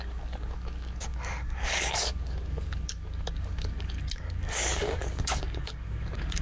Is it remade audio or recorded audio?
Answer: remade